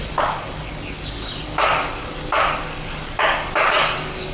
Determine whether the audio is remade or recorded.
remade